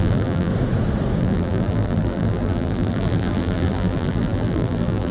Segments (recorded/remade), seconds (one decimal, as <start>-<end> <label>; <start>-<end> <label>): 0.0-0.5 remade; 0.5-1.2 recorded; 1.2-5.1 remade